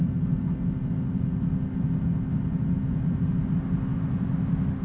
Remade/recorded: recorded